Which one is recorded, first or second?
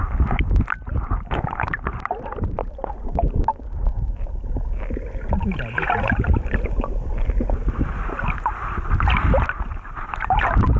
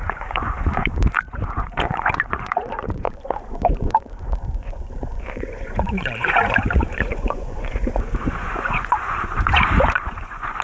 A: first